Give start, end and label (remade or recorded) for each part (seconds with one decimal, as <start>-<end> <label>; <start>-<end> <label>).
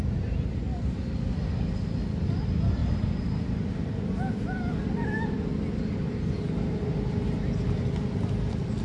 0.0-8.8 recorded